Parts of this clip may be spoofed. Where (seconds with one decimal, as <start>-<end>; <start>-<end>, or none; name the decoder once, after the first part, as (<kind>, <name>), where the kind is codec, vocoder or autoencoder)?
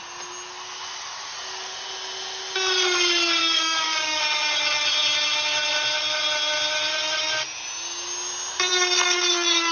3.4-4.2 (codec, DAC)